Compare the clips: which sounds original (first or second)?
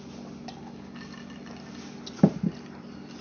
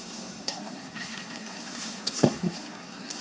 first